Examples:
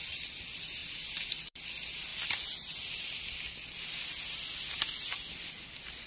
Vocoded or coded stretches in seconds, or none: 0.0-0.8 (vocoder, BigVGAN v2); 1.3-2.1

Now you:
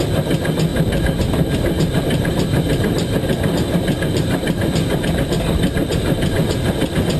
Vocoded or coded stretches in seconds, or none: 0.7-5.0 (vocoder, BigVGAN v2)

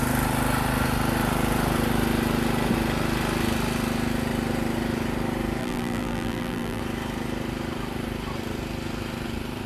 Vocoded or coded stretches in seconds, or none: 5.6-6.8 (vocoder, BigVGAN v2)

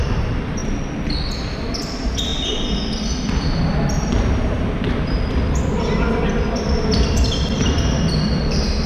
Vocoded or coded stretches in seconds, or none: 0.0-0.6 (vocoder, BigVGAN v2); 1.6-2.3; 5.0-8.9

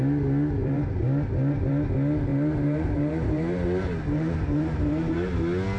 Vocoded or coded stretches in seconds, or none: 0.6-1.7 (vocoder, BigVGAN v2); 2.3-5.3

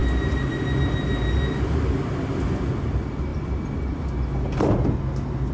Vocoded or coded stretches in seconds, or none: none

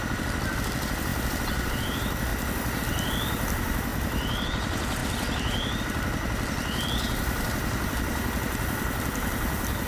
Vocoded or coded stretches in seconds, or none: 0.0-2.3 (vocoder, BigVGAN v2); 2.8-5.0; 5.8-9.9

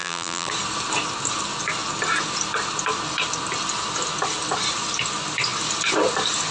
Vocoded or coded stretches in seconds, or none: 0.0-0.5 (vocoder, BigVGAN v2)